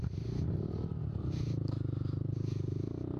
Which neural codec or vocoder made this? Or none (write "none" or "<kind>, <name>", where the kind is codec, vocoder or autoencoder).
none